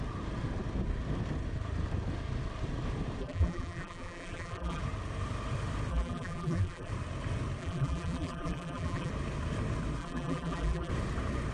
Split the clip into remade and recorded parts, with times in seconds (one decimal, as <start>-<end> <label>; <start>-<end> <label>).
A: 0.0-3.2 recorded; 3.2-4.8 remade; 4.8-5.9 recorded; 5.9-6.9 remade; 6.9-7.6 recorded; 7.6-9.1 remade; 9.1-10.0 recorded; 10.0-10.9 remade; 10.9-11.5 recorded